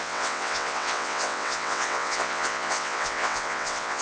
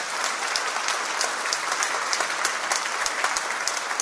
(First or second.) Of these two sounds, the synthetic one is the first